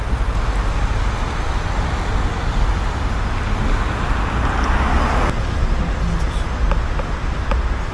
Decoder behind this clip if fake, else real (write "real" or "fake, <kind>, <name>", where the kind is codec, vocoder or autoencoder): real